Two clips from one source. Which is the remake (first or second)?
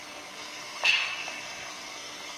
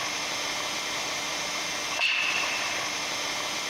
first